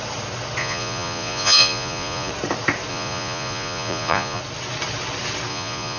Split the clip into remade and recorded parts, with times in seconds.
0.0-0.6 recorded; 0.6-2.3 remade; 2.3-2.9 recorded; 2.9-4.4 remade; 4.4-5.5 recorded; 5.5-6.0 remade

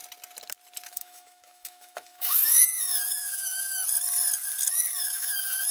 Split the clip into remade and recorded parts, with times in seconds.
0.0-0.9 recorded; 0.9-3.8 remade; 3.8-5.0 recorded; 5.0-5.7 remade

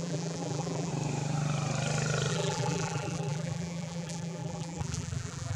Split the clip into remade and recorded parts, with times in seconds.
0.0-0.9 remade; 0.9-2.3 recorded; 2.3-5.6 remade